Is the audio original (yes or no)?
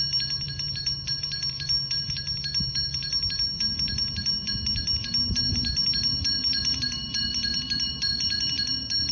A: no